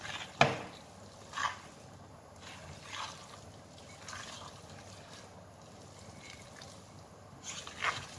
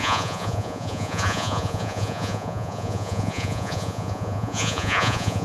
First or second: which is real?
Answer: first